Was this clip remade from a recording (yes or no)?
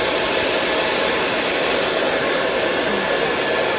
no